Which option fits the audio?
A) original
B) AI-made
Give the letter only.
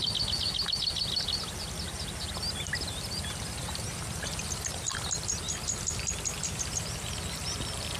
A